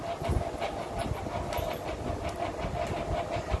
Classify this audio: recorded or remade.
recorded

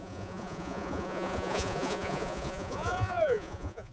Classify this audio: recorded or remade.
remade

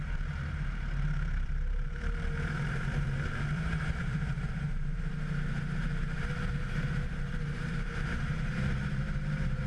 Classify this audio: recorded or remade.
remade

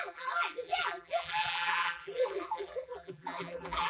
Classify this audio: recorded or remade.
remade